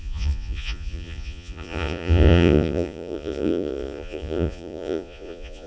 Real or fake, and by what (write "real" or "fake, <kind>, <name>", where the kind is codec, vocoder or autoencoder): fake, vocoder, Vocos